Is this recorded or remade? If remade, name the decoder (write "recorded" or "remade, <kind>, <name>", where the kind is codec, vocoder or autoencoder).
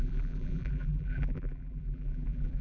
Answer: remade, vocoder, BigVGAN v2